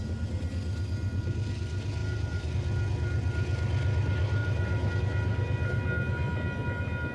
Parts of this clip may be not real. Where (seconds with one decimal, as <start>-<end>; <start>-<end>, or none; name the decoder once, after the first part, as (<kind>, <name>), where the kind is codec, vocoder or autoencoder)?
2.0-2.5 (vocoder, BigVGAN v2); 4.4-5.0